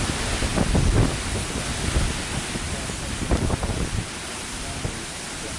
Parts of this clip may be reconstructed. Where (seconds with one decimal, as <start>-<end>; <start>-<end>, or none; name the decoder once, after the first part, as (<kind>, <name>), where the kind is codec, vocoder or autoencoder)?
none